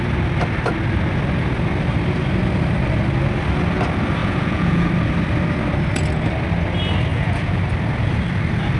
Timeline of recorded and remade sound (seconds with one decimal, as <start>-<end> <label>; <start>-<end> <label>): 0.0-4.2 recorded; 4.2-4.9 remade; 4.9-7.1 recorded; 7.1-7.6 remade; 7.6-8.8 recorded